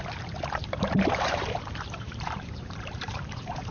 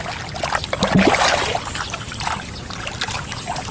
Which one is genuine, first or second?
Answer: second